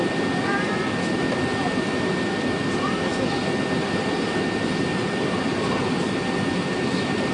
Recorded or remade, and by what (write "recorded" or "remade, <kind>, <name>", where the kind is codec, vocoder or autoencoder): remade, vocoder, BigVGAN v2